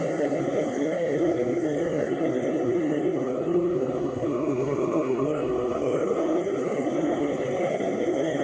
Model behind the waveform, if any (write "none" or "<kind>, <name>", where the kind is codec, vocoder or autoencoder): codec, SNAC